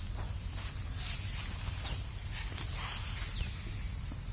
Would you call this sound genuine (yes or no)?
yes